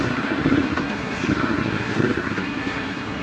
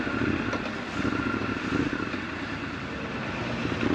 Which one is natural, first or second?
second